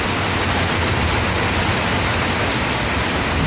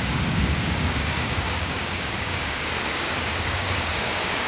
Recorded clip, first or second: first